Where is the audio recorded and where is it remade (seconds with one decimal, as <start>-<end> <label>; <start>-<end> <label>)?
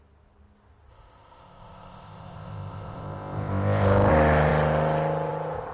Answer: 0.0-0.9 recorded; 0.9-4.1 remade; 4.1-5.7 recorded